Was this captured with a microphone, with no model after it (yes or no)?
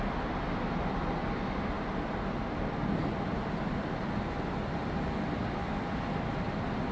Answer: yes